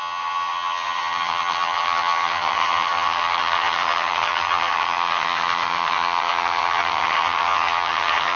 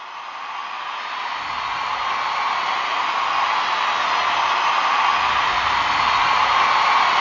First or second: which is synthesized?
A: first